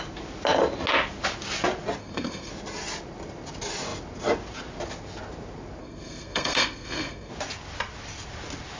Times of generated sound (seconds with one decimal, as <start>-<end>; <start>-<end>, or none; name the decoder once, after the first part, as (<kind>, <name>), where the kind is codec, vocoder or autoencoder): 2.0-2.5 (codec, SNAC); 5.8-7.3